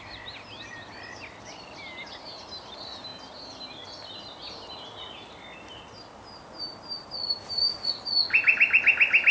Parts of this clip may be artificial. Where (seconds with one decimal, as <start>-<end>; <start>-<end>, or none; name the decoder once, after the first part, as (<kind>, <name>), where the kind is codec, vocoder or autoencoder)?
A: none